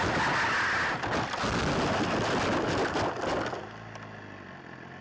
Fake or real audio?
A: real